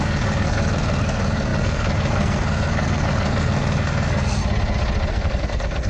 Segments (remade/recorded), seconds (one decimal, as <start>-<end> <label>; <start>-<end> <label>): 0.0-4.4 remade; 4.4-5.1 recorded; 5.1-5.9 remade